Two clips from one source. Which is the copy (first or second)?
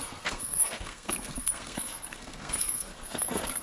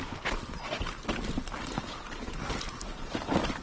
first